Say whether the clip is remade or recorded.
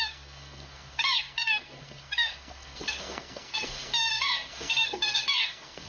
remade